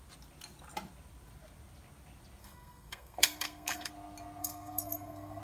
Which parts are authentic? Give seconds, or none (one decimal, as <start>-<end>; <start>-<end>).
0.0-2.4; 3.9-4.4